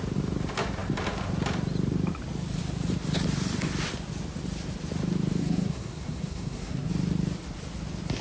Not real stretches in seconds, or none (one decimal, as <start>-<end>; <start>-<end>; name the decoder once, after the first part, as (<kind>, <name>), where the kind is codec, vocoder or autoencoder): 5.4-6.9 (codec, SNAC)